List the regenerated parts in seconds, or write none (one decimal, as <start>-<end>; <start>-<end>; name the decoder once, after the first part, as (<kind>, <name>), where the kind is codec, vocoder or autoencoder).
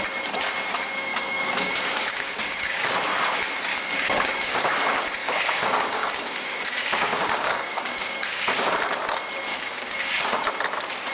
1.1-2.9 (codec, DAC); 3.7-4.6; 5.2-8.7; 9.5-10.1